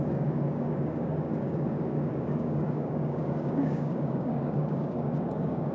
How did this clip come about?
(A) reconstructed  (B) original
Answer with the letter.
A